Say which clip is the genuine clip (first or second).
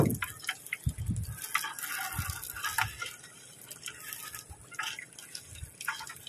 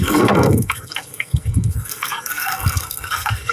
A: first